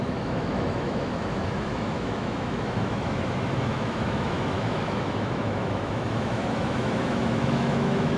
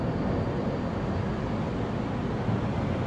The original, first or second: second